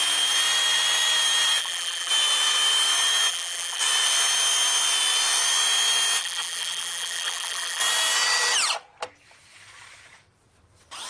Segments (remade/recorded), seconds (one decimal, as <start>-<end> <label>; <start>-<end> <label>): 0.0-1.6 recorded; 1.6-2.1 remade; 2.1-3.3 recorded; 3.3-3.8 remade; 3.8-6.2 recorded; 6.2-7.8 remade; 7.8-11.1 recorded